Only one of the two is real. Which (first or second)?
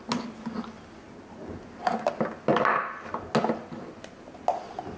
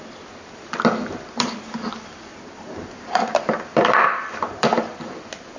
first